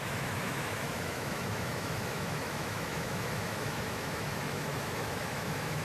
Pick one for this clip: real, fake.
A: fake